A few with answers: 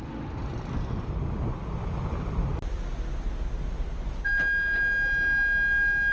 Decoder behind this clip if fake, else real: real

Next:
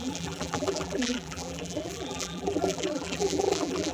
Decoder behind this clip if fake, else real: fake, vocoder, BigVGAN v2